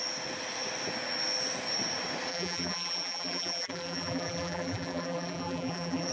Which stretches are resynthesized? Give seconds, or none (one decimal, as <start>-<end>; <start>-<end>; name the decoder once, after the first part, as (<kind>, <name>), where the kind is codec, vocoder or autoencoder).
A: 2.3-6.1 (vocoder, BigVGAN v2)